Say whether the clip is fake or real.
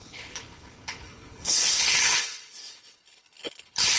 fake